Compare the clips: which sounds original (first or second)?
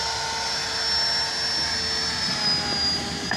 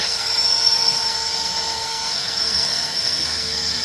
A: first